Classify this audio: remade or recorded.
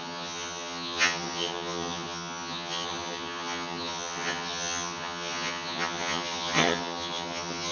remade